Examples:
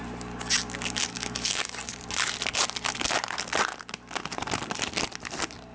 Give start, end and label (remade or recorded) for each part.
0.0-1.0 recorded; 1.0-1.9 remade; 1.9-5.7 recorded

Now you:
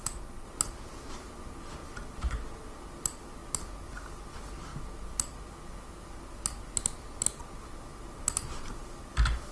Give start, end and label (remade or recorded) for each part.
0.0-9.5 recorded

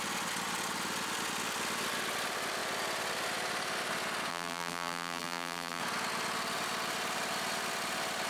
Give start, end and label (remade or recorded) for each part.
0.0-4.3 recorded; 4.3-5.8 remade; 5.8-8.3 recorded

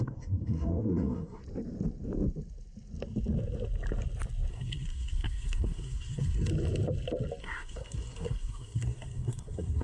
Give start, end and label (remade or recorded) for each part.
0.0-1.4 remade; 1.4-4.5 recorded; 4.5-6.5 remade; 6.5-7.4 recorded; 7.4-9.8 remade

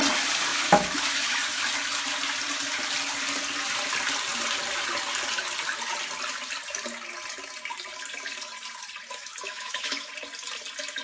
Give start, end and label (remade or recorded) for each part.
0.0-0.5 recorded; 0.5-1.6 remade; 1.6-9.1 recorded; 9.1-10.1 remade; 10.1-11.0 recorded

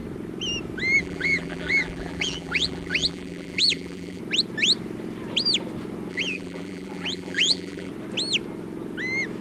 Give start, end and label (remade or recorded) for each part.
0.0-1.0 recorded; 1.0-4.2 remade; 4.2-6.1 recorded; 6.1-7.9 remade; 7.9-9.4 recorded

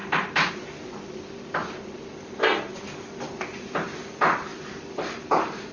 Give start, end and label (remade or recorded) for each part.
0.0-0.5 remade; 0.5-4.5 recorded; 4.5-5.7 remade

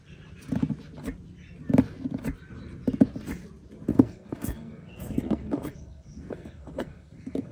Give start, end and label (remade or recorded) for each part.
0.0-3.9 recorded; 3.9-7.5 remade